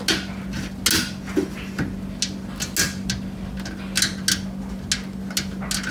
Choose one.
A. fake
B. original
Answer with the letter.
B